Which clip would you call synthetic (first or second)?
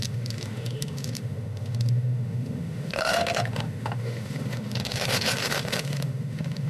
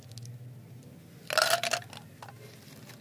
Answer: first